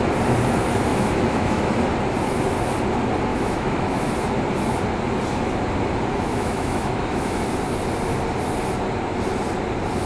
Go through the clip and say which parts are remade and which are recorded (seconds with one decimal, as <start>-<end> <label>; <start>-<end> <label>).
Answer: 0.0-0.9 recorded; 0.9-1.7 remade; 1.7-3.3 recorded; 3.3-4.1 remade; 4.1-6.1 recorded; 6.1-7.5 remade; 7.5-10.1 recorded